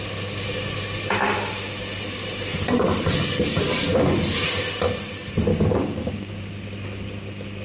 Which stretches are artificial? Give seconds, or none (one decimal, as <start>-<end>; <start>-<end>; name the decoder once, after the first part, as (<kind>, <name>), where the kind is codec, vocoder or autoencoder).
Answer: 5.5-6.4 (codec, DAC)